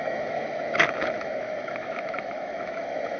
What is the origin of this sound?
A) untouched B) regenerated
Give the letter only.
B